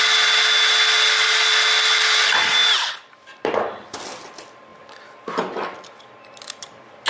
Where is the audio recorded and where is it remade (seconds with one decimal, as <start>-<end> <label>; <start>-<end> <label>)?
0.0-7.1 recorded